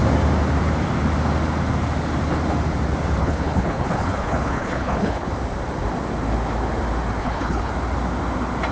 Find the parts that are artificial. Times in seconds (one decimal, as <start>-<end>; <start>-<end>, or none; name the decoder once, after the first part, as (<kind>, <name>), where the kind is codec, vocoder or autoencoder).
3.2-5.3 (codec, HILCodec); 7.2-7.7